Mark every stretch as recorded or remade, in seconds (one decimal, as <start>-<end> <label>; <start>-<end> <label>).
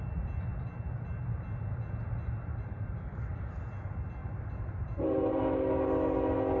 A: 0.0-2.5 recorded; 2.5-3.6 remade; 3.6-4.2 recorded; 4.2-5.4 remade; 5.4-6.6 recorded